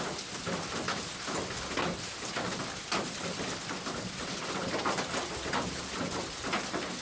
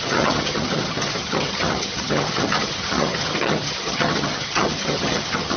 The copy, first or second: second